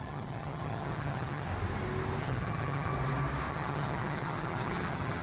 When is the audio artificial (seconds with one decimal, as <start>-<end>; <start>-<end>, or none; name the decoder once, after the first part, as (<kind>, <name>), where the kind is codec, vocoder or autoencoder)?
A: 0.0-1.5 (vocoder, HiFi-GAN); 2.2-2.9; 3.5-5.2